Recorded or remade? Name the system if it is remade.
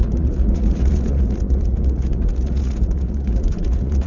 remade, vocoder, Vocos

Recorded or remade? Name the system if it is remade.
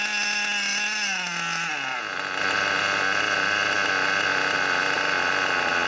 recorded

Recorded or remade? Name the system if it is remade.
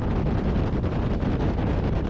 recorded